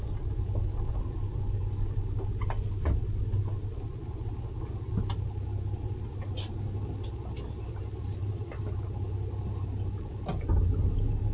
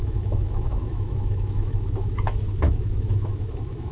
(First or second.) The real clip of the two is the first